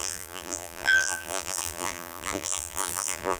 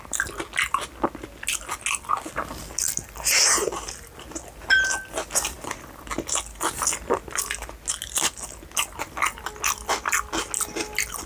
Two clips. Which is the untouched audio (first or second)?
second